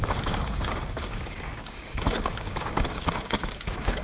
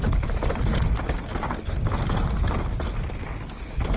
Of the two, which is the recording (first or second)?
second